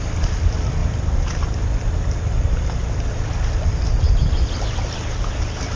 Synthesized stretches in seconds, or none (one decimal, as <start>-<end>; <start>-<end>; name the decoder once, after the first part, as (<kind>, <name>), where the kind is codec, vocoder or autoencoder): none